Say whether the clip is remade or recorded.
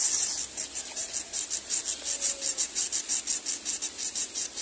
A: recorded